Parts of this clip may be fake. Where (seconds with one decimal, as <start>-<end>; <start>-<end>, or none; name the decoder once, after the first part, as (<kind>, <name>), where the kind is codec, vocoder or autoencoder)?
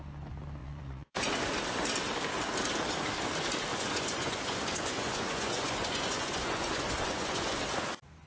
0.6-1.3 (vocoder, Vocos); 3.7-7.6